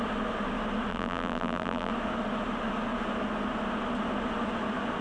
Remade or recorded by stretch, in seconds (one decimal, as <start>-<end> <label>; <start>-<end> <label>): 0.0-0.9 recorded; 0.9-1.9 remade; 1.9-5.0 recorded